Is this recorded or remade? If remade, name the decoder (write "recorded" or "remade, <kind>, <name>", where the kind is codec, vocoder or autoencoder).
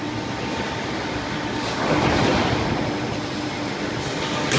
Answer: recorded